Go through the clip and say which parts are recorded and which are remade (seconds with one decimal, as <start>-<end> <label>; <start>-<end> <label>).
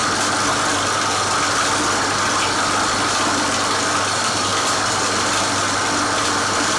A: 0.0-4.1 recorded; 4.1-4.5 remade; 4.5-6.2 recorded; 6.2-6.8 remade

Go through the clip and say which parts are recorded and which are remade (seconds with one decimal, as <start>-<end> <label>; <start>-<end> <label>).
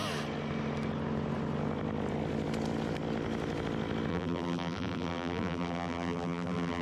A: 0.0-4.1 recorded; 4.1-6.8 remade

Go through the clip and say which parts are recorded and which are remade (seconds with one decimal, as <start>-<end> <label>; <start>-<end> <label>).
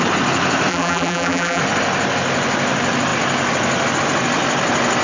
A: 0.0-0.7 recorded; 0.7-1.6 remade; 1.6-5.0 recorded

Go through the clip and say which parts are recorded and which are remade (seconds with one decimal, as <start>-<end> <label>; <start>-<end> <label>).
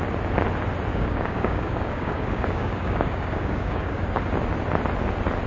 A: 0.0-0.9 recorded; 0.9-4.2 remade; 4.2-5.5 recorded